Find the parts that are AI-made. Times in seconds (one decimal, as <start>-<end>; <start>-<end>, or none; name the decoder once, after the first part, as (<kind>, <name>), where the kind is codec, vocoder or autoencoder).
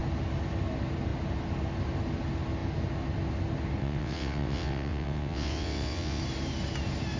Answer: 3.8-6.2 (vocoder, WaveNeXt)